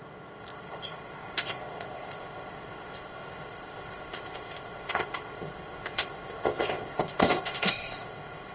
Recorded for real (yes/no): no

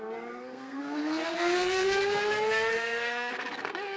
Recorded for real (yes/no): no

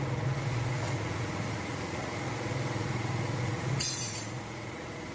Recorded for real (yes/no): no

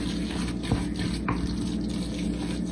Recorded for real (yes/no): yes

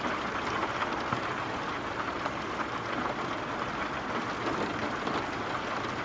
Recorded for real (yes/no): yes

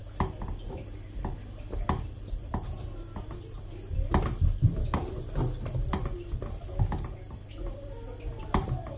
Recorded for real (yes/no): yes